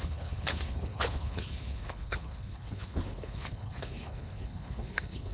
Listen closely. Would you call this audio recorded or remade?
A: remade